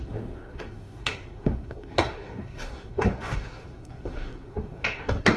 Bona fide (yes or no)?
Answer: no